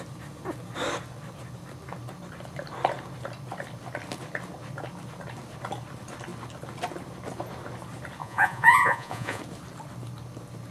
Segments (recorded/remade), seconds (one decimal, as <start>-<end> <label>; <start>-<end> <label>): 0.0-8.2 recorded; 8.2-9.4 remade; 9.4-10.7 recorded